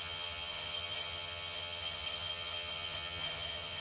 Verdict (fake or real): fake